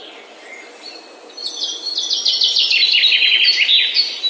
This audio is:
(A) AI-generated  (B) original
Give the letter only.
B